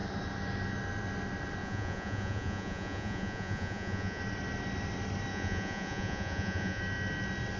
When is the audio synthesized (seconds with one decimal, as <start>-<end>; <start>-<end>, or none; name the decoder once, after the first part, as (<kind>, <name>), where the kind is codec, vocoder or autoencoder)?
1.6-4.2 (vocoder, Vocos); 5.3-6.8